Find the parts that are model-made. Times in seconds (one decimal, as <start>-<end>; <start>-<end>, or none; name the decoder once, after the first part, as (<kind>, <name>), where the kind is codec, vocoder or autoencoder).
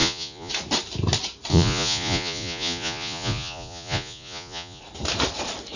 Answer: 0.0-0.5 (vocoder, Vocos); 1.5-4.8